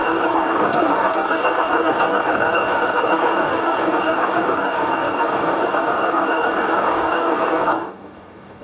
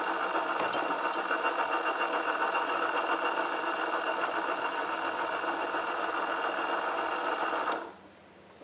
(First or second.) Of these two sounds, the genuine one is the second